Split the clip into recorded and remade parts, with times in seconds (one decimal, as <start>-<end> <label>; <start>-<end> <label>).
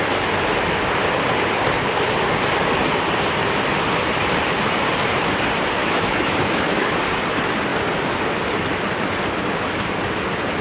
0.0-5.8 recorded; 5.8-7.0 remade; 7.0-10.6 recorded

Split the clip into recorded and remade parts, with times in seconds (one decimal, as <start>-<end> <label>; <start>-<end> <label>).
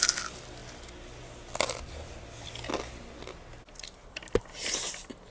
0.0-5.3 recorded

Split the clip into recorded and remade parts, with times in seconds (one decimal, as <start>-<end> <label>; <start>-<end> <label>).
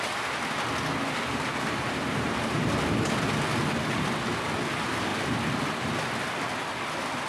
0.0-1.3 recorded; 1.3-2.7 remade; 2.7-7.3 recorded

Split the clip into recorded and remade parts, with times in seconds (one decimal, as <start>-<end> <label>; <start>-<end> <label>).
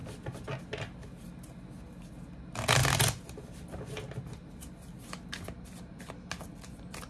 0.0-7.1 recorded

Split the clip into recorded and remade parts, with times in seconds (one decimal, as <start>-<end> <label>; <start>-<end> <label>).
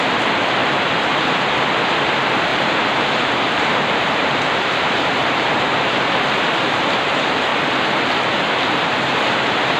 0.0-2.5 recorded; 2.5-6.4 remade; 6.4-7.5 recorded; 7.5-8.0 remade; 8.0-9.8 recorded